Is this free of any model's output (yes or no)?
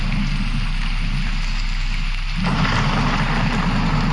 yes